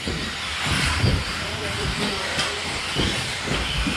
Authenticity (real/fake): fake